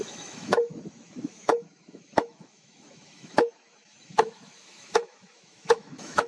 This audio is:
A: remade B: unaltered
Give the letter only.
A